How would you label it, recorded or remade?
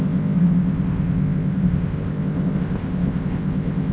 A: remade